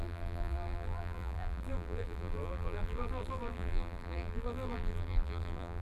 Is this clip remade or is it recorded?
remade